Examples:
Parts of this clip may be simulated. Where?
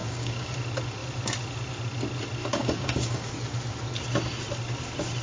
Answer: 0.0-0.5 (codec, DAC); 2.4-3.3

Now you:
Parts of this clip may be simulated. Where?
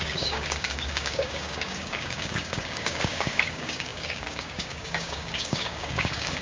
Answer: 0.0-6.4 (codec, DAC)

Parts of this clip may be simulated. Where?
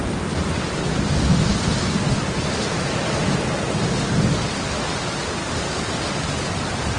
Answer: 5.4-6.0 (codec, DAC)